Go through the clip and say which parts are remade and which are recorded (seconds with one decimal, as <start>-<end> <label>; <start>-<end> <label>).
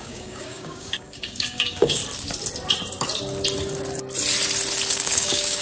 0.0-2.0 remade; 2.0-4.9 recorded; 4.9-5.6 remade